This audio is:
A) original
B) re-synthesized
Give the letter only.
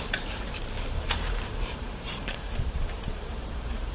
B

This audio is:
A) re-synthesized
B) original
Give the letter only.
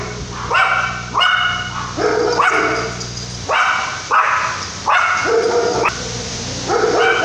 B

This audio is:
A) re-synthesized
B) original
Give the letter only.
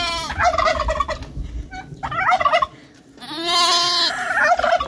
B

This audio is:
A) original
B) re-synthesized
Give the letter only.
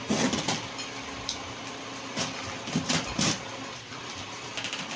B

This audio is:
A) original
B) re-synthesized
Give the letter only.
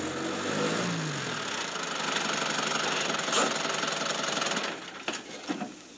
A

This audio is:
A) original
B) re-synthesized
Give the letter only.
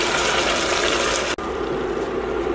A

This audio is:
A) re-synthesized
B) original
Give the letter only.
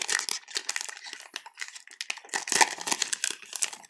B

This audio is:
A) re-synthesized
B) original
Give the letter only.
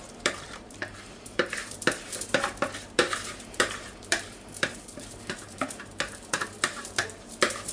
A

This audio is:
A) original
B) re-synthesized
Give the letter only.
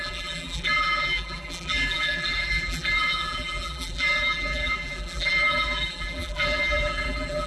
B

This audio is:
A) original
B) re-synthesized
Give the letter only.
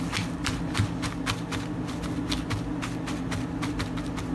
A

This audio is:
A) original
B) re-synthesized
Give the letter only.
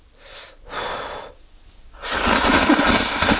B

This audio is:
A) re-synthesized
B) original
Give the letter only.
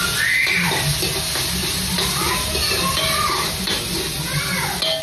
B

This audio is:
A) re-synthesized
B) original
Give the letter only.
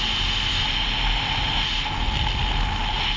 B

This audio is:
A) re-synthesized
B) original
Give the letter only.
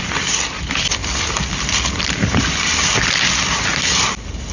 B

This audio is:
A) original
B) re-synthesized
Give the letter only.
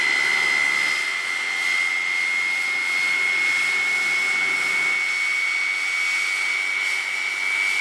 A